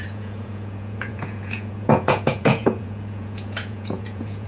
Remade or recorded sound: remade